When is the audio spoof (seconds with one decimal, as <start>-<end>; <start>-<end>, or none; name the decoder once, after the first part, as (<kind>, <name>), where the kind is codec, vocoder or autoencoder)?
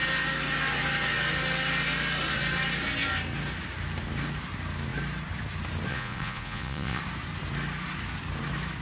5.9-7.0 (vocoder, Vocos)